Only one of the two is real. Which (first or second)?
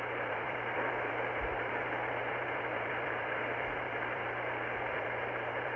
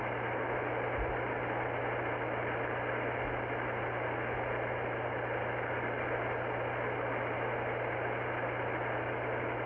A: second